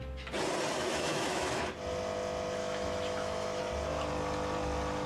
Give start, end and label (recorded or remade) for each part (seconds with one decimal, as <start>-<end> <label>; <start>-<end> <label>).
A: 0.0-0.8 recorded; 0.8-1.6 remade; 1.6-2.6 recorded; 2.6-3.6 remade; 3.6-5.1 recorded